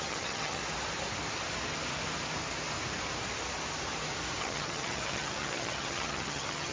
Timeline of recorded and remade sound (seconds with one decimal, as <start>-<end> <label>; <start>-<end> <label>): 0.0-0.6 remade; 0.6-4.4 recorded; 4.4-6.7 remade